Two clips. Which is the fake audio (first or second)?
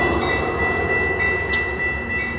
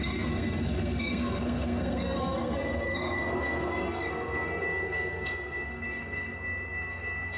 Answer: second